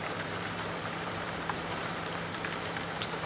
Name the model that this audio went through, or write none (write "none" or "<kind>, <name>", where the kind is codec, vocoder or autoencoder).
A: vocoder, BigVGAN v2